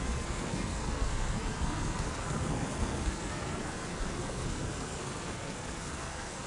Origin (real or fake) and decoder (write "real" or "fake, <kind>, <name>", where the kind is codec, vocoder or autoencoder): fake, codec, SNAC